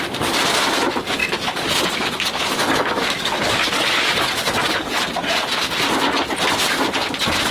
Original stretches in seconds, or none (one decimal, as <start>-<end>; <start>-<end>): 0.0-1.2; 5.0-7.5